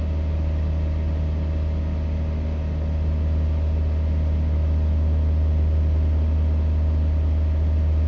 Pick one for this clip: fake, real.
real